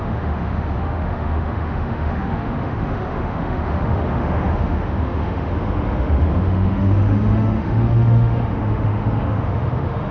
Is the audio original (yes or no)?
no